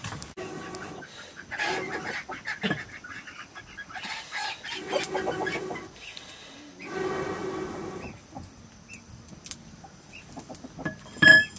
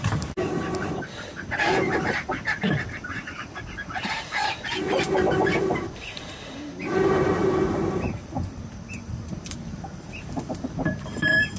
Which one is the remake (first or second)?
second